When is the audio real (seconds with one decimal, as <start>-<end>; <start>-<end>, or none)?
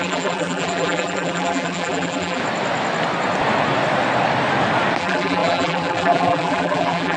2.4-5.0